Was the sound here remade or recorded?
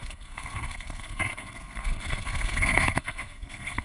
remade